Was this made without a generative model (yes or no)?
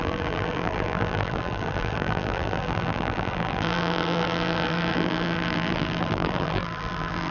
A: no